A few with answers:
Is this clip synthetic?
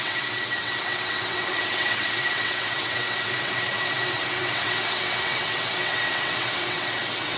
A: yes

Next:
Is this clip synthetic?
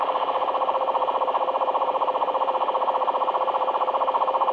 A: no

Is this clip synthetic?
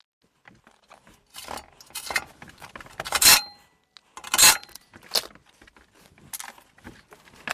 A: no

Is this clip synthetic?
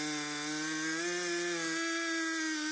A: no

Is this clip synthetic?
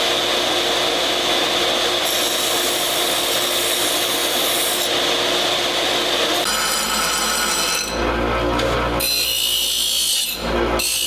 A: no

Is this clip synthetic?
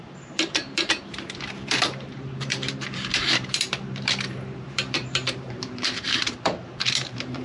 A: yes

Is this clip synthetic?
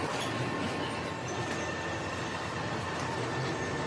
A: no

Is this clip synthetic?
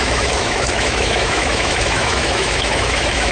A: yes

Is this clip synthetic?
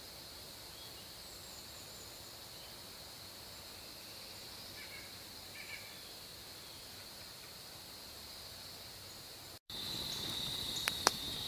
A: no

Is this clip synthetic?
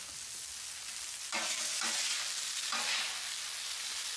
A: no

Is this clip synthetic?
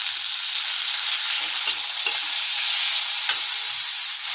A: no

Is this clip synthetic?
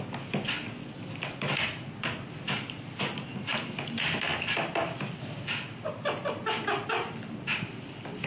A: no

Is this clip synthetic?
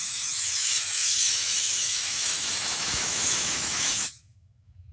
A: yes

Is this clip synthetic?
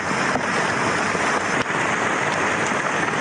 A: no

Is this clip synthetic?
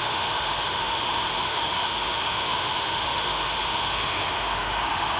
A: yes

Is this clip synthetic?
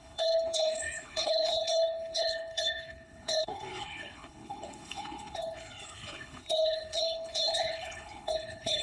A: yes